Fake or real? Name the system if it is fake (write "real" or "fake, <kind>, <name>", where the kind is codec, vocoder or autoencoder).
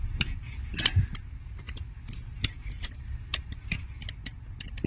real